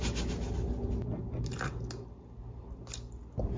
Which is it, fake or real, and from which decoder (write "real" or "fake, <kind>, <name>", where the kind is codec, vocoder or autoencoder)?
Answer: real